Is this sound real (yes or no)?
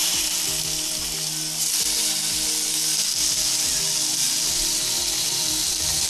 yes